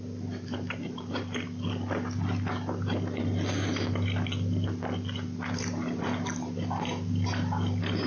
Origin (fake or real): real